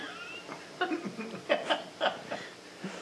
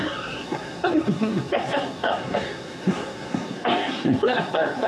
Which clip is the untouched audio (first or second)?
first